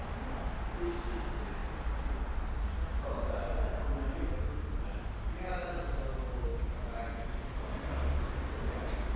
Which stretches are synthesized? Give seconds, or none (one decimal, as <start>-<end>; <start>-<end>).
none